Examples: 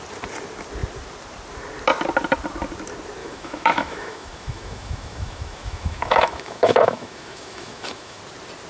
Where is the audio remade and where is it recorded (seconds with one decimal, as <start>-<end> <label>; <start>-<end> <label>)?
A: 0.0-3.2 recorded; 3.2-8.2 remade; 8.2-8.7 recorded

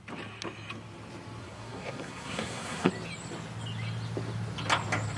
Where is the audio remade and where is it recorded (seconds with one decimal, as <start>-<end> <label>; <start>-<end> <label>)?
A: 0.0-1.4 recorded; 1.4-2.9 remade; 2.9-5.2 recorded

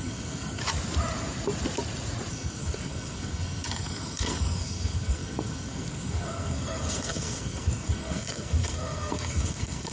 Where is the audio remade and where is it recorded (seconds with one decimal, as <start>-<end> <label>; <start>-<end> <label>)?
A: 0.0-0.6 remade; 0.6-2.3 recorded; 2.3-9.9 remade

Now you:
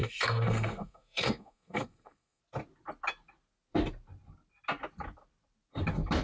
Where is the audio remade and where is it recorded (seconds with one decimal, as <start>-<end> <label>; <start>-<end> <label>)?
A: 0.0-2.4 remade; 2.4-6.2 recorded

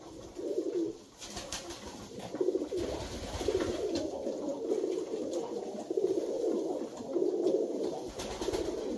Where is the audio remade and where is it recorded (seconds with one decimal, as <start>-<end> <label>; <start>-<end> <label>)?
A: 0.0-9.0 recorded

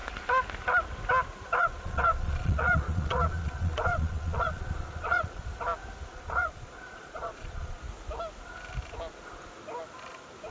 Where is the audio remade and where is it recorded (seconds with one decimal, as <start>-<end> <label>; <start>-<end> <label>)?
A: 0.0-1.6 recorded; 1.6-5.5 remade; 5.5-6.1 recorded; 6.1-7.8 remade; 7.8-10.5 recorded

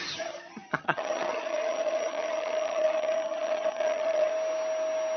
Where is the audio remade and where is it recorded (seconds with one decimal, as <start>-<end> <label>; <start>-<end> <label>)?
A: 0.0-4.3 remade; 4.3-5.2 recorded

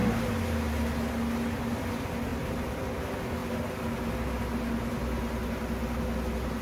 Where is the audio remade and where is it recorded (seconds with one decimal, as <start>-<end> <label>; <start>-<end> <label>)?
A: 0.0-2.3 recorded; 2.3-3.0 remade; 3.0-6.6 recorded